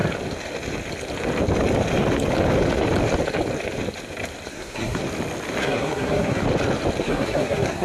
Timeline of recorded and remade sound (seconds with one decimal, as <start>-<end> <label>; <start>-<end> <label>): 0.0-4.5 recorded; 4.5-5.0 remade; 5.0-5.6 recorded; 5.6-6.4 remade; 6.4-7.0 recorded; 7.0-7.8 remade